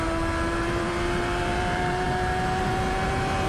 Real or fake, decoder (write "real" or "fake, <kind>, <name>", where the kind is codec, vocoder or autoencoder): fake, vocoder, BigVGAN v2